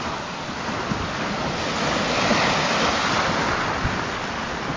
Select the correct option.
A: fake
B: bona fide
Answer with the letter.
B